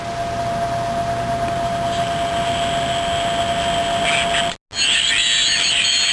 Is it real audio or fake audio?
real